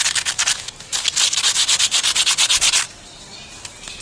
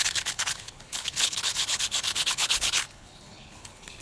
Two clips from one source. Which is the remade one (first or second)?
second